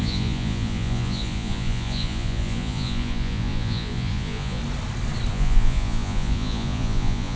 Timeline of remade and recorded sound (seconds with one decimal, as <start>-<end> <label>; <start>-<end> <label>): 0.0-4.6 remade; 4.6-5.3 recorded; 5.3-7.4 remade